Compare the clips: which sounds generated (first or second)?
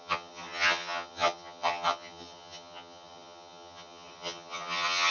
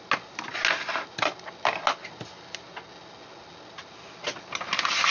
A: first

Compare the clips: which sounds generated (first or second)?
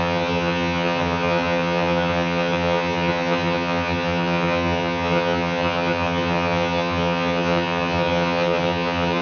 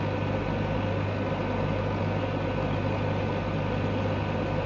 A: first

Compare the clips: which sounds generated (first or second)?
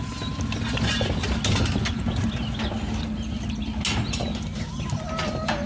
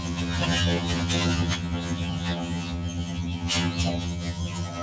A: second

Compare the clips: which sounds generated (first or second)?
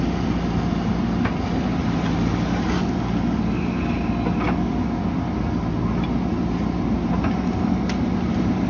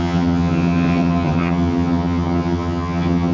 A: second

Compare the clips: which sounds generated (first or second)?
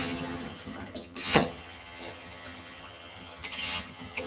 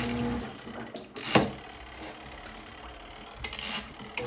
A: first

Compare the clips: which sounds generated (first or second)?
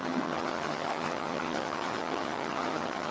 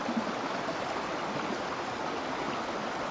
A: first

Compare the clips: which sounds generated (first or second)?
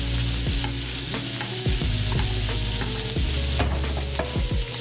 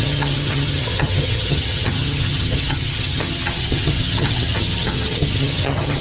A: second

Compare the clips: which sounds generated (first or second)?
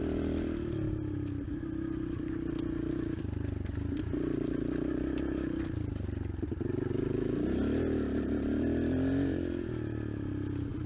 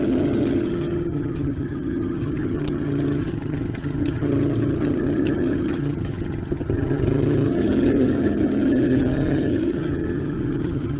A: second